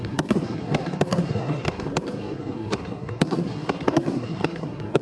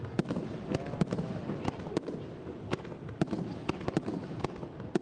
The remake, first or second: first